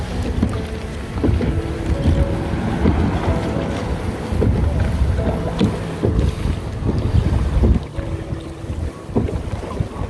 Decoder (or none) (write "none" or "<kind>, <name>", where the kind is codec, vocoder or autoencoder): none